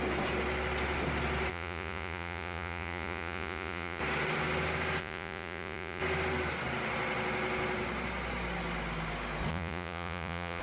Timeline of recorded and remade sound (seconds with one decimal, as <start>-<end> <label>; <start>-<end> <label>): 0.0-1.5 recorded; 1.5-4.0 remade; 4.0-5.0 recorded; 5.0-6.0 remade; 6.0-9.5 recorded; 9.5-10.6 remade